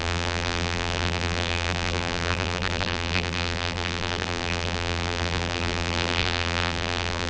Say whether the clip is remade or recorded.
remade